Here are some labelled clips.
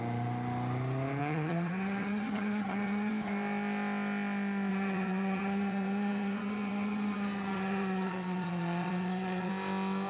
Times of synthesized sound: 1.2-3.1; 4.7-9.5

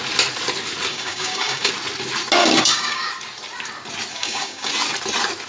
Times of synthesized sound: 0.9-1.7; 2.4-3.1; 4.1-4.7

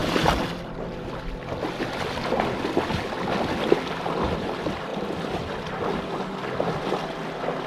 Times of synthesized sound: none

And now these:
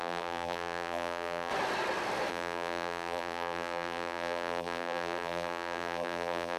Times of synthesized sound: 0.0-1.5; 2.3-6.6

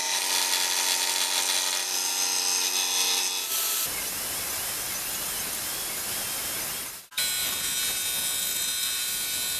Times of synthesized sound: none

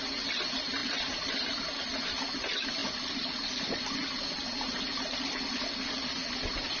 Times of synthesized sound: none

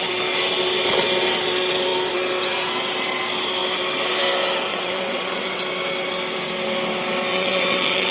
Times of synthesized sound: 4.7-5.6; 7.3-8.1